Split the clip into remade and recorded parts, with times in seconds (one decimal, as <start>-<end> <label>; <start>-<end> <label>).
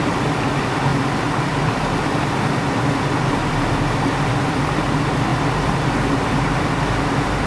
0.0-7.5 recorded